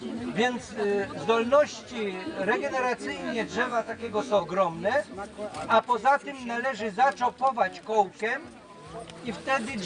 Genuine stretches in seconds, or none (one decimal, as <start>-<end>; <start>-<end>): 0.0-3.2; 4.4-9.9